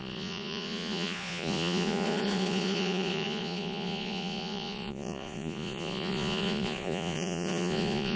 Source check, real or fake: fake